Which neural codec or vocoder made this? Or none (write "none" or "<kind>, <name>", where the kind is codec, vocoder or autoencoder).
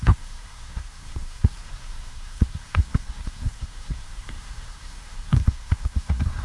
codec, SNAC